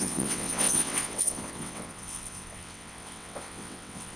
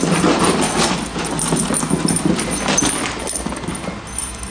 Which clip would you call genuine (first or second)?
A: second